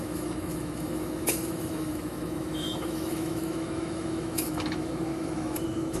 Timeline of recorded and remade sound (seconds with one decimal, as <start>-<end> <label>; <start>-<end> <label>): 0.0-6.0 remade